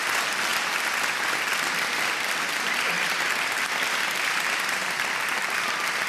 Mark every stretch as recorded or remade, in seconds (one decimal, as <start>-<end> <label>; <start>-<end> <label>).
0.0-6.1 recorded